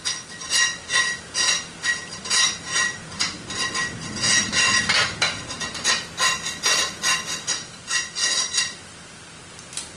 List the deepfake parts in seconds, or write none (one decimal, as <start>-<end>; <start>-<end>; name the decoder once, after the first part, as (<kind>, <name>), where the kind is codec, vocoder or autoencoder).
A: none